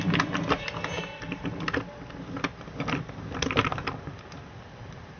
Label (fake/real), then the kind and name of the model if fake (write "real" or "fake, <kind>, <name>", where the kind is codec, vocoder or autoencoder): real